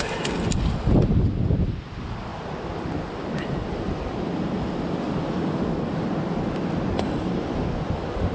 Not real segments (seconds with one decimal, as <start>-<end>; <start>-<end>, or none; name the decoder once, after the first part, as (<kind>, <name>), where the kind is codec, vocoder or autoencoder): none